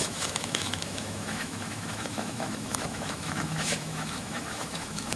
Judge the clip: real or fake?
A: fake